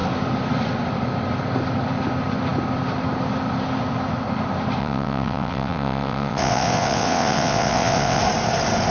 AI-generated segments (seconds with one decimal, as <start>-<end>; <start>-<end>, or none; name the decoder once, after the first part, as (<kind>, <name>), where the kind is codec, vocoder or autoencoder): 4.8-8.2 (vocoder, WaveNeXt)